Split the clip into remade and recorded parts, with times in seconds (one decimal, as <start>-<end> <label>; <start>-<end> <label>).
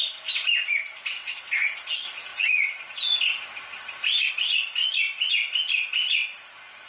0.0-2.3 remade; 2.3-4.3 recorded; 4.3-4.8 remade; 4.8-5.3 recorded; 5.3-6.9 remade